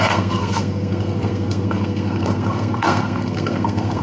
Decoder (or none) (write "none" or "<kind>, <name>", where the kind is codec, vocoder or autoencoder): codec, SNAC